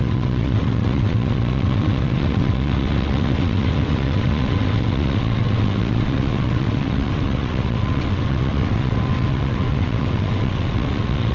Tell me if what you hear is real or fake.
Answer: fake